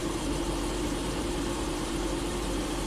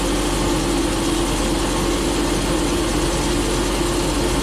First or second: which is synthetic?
first